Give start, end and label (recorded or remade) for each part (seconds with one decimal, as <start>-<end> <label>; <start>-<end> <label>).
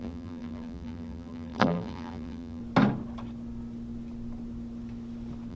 0.0-2.6 remade; 2.6-5.5 recorded